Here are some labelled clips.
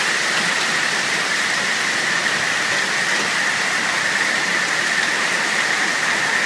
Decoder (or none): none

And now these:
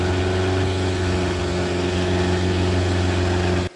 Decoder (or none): none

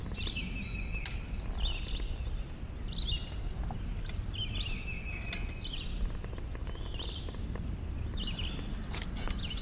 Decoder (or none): none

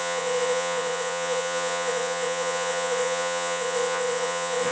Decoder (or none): vocoder, Vocos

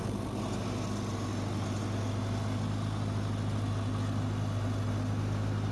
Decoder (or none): none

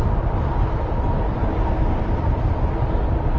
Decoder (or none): none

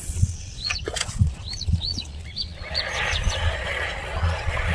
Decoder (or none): vocoder, Vocos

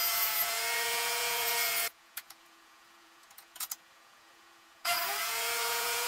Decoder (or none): vocoder, Vocos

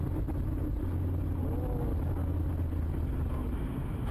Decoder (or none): none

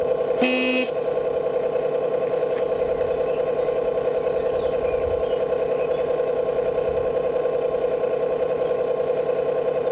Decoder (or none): none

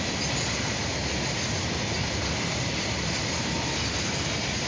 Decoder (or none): none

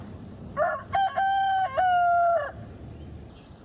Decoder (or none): none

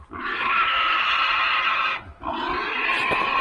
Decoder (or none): none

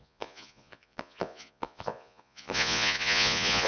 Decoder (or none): vocoder, Vocos